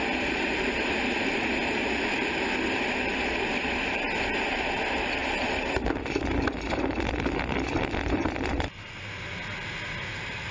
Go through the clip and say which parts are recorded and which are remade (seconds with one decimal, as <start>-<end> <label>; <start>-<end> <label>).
0.0-10.5 recorded